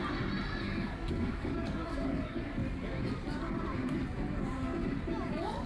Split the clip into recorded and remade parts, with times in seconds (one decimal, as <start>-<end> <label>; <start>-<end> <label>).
0.0-0.6 recorded; 0.6-2.6 remade; 2.6-5.3 recorded; 5.3-5.7 remade